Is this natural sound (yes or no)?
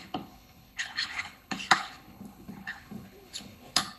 no